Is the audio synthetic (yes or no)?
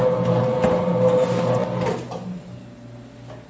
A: no